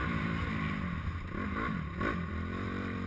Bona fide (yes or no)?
no